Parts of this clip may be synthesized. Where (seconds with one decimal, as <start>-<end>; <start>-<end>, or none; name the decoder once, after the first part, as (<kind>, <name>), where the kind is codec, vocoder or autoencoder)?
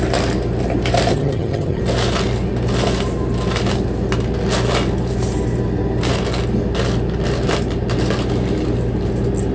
1.1-1.8 (vocoder, HiFi-GAN)